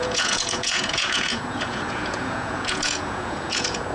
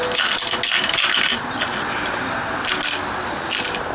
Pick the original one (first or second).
second